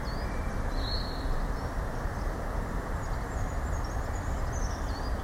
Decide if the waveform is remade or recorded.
recorded